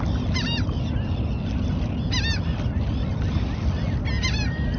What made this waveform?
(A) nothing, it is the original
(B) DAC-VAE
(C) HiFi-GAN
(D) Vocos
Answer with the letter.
A